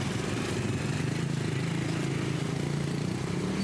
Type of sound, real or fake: real